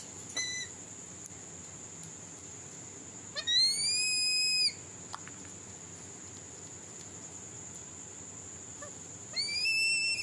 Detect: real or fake real